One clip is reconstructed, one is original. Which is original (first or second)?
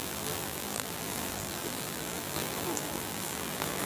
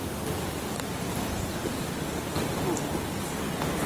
second